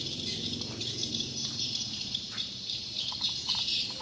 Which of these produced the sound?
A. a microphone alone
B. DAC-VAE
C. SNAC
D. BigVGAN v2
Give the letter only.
D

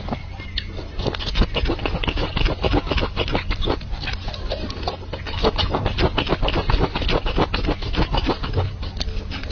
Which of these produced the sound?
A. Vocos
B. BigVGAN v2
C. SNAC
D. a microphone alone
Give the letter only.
D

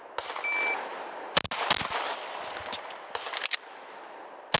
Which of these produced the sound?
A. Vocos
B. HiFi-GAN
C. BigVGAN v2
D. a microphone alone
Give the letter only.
D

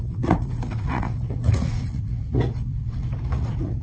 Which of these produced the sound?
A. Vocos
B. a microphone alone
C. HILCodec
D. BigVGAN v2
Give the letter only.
A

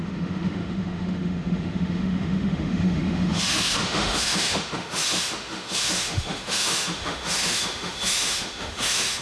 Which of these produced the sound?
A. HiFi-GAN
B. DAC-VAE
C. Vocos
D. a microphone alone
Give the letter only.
B